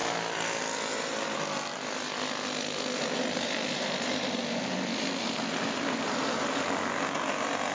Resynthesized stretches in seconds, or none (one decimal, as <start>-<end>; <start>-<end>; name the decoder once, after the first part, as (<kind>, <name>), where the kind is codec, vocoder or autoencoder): none